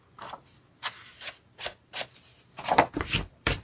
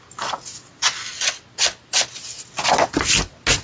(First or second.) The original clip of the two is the second